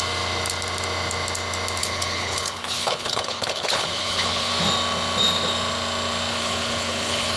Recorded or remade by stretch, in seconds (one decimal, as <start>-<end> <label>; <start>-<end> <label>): 0.0-1.8 recorded; 1.8-4.5 remade; 4.5-6.3 recorded; 6.3-7.4 remade